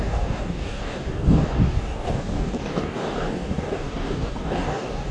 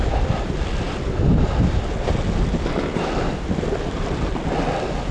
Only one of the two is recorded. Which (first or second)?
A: second